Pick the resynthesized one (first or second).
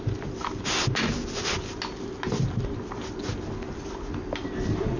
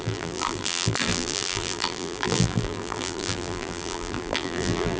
second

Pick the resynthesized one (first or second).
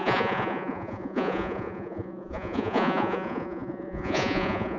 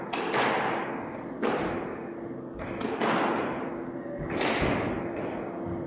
first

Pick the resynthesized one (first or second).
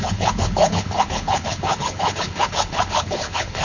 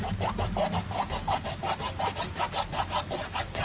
first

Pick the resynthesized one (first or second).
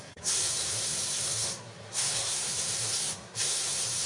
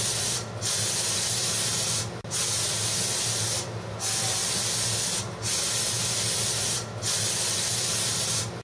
first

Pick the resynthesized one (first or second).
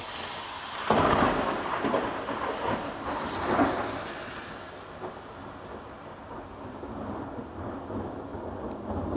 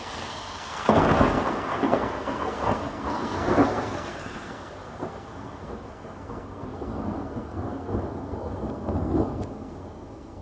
second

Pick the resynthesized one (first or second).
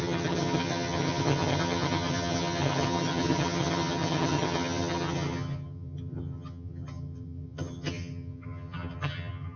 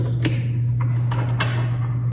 first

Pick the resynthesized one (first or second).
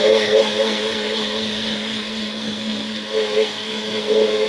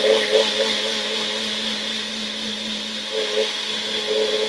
first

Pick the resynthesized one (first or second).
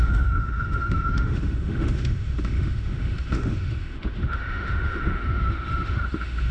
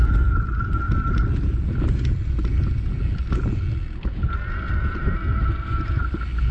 first